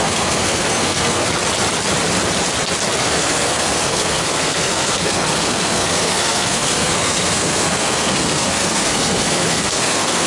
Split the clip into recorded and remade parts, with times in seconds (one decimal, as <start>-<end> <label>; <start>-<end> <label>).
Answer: 0.0-1.3 remade; 1.3-3.0 recorded; 3.0-10.3 remade